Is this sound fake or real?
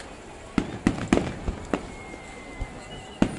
real